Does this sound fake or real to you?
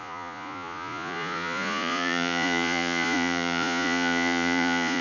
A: fake